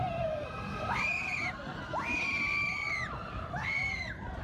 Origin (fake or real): real